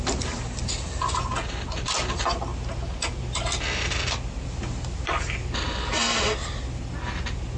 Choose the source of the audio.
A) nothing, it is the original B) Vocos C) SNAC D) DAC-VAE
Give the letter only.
A